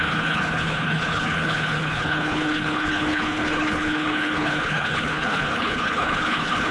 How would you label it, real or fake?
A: fake